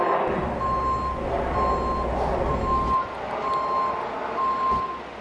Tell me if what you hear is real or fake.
real